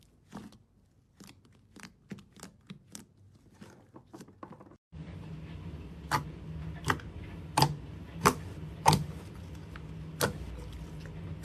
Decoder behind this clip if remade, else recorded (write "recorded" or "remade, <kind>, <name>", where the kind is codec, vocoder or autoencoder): recorded